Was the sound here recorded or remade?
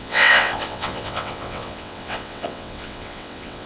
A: remade